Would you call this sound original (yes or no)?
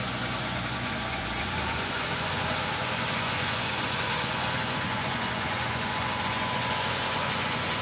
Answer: no